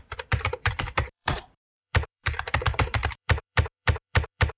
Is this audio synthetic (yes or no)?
yes